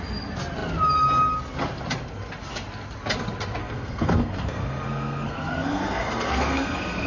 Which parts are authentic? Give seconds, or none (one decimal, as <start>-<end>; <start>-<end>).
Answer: 0.0-3.6